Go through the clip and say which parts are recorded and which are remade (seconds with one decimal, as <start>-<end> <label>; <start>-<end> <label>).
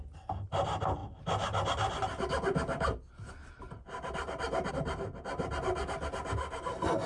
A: 0.0-7.1 recorded